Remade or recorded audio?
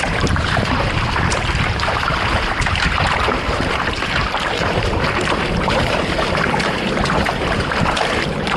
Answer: remade